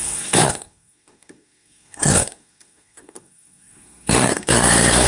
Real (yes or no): no